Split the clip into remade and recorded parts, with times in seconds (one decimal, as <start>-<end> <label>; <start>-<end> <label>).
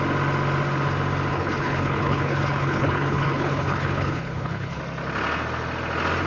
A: 0.0-1.3 recorded; 1.3-4.8 remade; 4.8-6.3 recorded